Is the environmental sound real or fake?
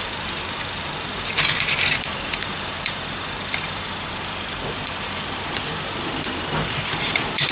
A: fake